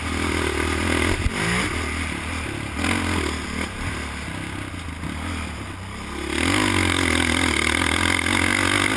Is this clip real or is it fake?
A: real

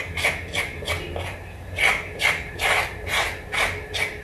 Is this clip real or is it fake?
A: real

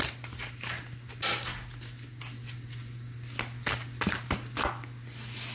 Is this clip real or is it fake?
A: real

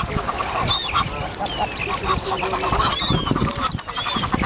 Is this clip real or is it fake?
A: real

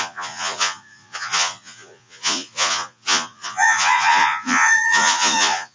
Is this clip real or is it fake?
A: fake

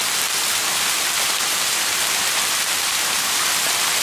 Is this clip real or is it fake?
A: fake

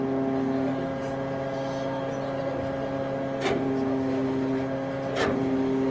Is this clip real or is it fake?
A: real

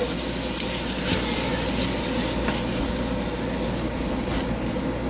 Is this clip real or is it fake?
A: real